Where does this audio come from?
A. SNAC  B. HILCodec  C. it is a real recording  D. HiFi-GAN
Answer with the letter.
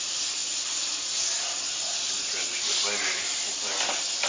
C